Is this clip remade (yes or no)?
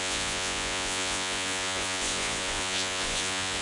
yes